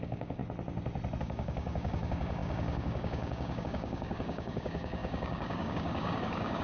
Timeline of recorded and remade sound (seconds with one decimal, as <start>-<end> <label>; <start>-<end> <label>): 0.0-0.4 remade; 0.4-1.2 recorded; 1.2-6.6 remade

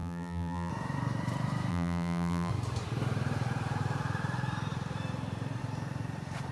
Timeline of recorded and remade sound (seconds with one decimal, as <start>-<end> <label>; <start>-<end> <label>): 0.0-0.7 remade; 0.7-1.7 recorded; 1.7-2.5 remade; 2.5-6.5 recorded

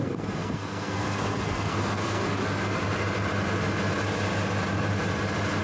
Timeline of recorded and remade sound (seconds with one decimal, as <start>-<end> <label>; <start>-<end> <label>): 0.0-2.2 remade; 2.2-5.6 recorded

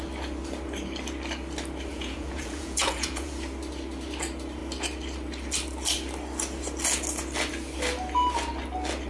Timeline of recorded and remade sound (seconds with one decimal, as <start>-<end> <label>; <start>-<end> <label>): 0.0-1.9 recorded; 1.9-3.3 remade; 3.3-9.1 recorded

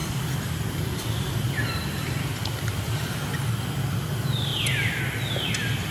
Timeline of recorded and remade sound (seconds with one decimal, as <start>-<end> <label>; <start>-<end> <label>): 0.0-3.5 remade; 3.5-5.9 recorded

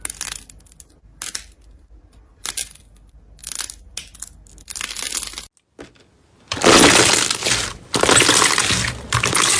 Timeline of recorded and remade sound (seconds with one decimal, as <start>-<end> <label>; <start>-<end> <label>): 0.0-9.6 recorded

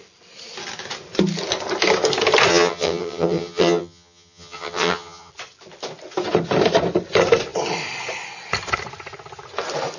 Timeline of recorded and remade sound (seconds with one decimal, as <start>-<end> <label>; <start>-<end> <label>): 0.0-2.5 recorded; 2.5-5.3 remade; 5.3-10.0 recorded

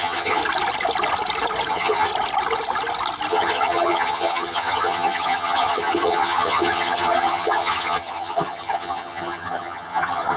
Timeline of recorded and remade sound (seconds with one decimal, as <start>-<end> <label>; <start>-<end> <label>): 0.0-0.4 remade; 0.4-1.7 recorded; 1.7-2.1 remade; 2.1-3.3 recorded; 3.3-10.4 remade